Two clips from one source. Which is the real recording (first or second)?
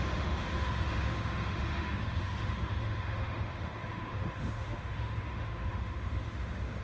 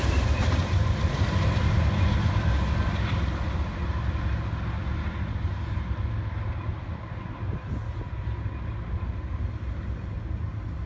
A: second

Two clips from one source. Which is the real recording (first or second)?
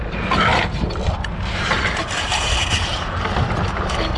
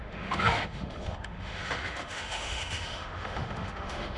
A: first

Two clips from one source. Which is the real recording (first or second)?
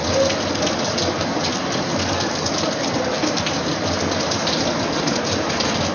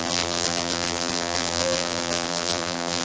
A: first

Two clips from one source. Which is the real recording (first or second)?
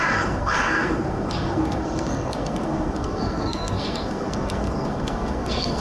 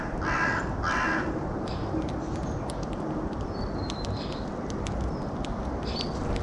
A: second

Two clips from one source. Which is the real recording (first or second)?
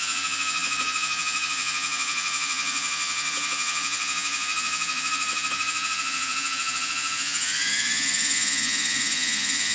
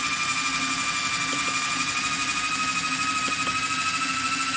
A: second